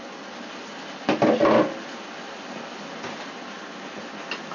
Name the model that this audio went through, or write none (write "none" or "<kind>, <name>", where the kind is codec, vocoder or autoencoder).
none